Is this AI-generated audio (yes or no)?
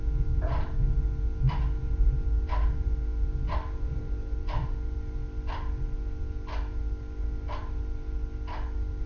no